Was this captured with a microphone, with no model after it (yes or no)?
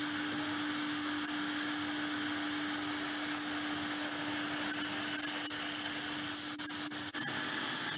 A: yes